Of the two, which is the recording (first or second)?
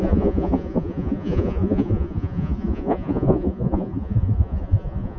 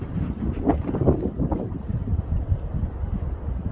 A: second